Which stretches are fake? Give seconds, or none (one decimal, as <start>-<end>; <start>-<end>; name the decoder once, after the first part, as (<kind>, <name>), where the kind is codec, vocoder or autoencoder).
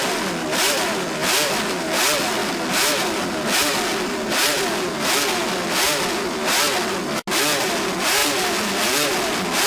none